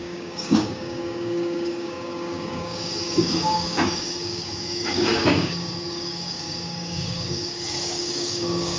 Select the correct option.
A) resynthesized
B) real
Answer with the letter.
A